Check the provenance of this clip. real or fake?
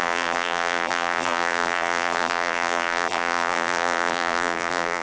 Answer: fake